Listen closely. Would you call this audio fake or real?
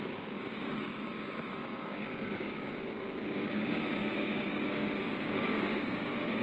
fake